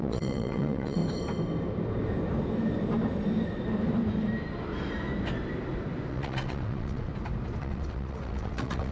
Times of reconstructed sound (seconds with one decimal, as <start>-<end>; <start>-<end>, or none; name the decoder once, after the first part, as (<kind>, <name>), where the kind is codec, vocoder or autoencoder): 0.0-1.0 (vocoder, WaveNeXt); 6.1-7.1; 7.6-8.9